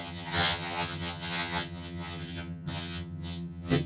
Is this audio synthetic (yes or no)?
yes